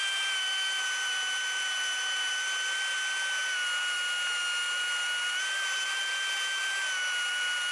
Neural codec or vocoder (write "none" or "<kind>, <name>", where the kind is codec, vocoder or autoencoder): none